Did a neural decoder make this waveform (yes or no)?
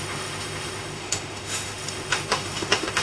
yes